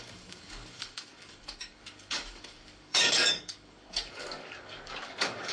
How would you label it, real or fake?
fake